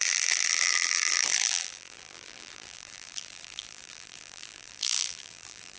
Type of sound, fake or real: fake